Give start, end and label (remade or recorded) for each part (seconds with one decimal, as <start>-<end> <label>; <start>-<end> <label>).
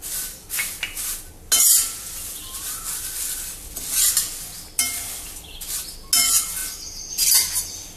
0.0-8.0 recorded